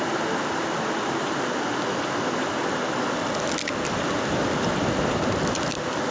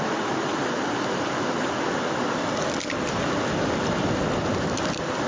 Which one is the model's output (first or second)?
second